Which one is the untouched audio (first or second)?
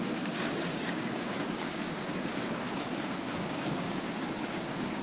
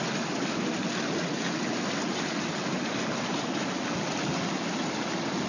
second